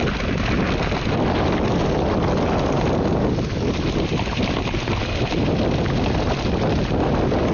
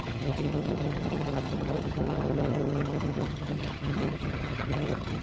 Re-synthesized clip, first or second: second